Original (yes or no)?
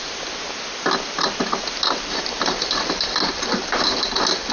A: yes